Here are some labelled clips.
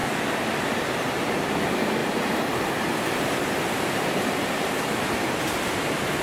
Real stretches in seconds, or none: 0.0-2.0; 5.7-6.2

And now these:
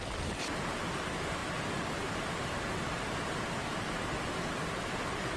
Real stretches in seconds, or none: 0.0-1.4; 3.2-5.4

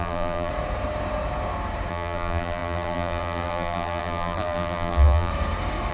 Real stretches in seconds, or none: 0.5-1.9; 5.3-5.9